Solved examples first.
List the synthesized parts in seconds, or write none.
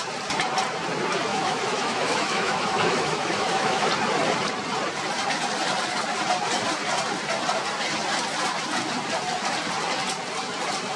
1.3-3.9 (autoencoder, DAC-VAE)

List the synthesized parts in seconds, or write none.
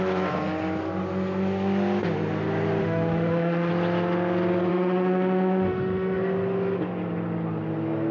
2.8-3.7 (autoencoder, DAC-VAE); 4.7-6.2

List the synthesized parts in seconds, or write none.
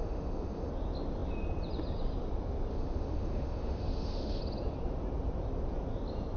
0.0-0.7 (autoencoder, DAC-VAE); 2.7-4.4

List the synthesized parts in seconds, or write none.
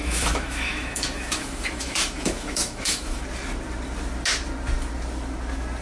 0.0-3.2 (autoencoder, DAC-VAE)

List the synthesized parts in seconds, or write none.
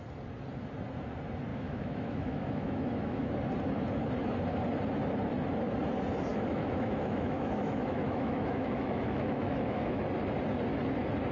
1.5-3.3 (autoencoder, DAC-VAE); 6.3-10.0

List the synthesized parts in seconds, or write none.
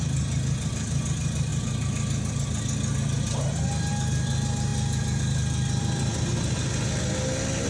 none